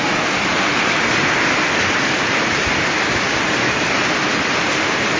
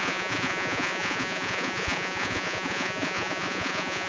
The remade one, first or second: second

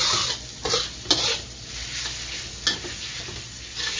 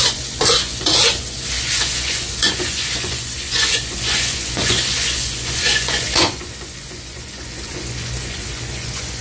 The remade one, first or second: second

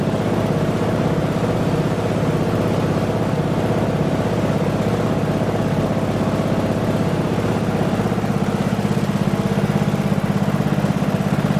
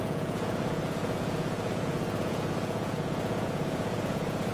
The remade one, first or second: second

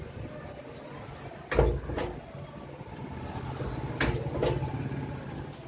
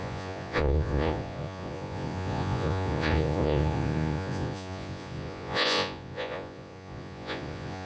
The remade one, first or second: second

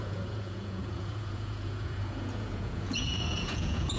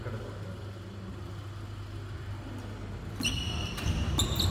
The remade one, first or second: first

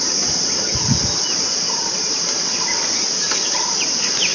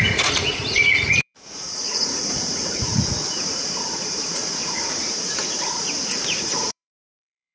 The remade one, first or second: second